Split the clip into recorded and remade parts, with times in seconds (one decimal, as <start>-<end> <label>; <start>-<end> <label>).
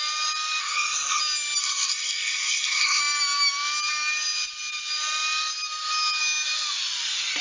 0.0-0.6 recorded; 0.6-1.2 remade; 1.2-1.6 recorded; 1.6-3.0 remade; 3.0-7.4 recorded